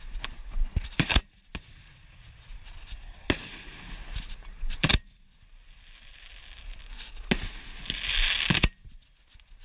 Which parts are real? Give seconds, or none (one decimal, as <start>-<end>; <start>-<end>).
0.0-9.6